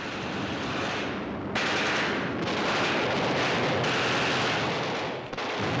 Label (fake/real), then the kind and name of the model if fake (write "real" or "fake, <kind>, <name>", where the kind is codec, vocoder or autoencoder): real